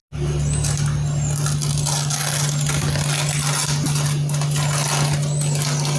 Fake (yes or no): no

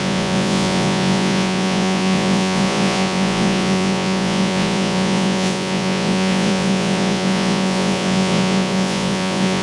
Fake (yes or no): yes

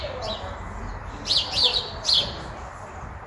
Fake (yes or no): no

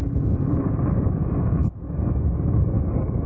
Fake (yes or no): yes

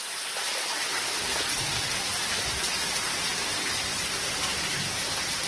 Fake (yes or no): no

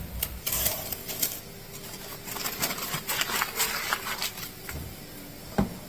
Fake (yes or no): no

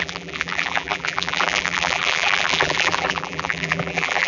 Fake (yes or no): yes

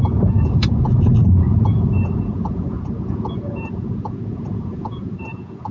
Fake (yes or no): yes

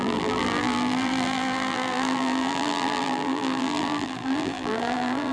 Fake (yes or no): yes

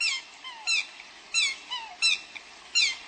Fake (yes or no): no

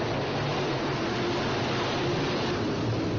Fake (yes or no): no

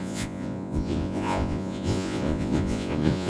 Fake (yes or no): yes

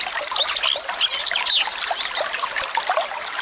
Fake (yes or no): no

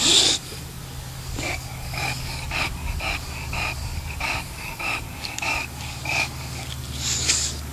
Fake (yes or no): yes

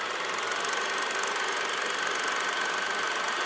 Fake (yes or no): no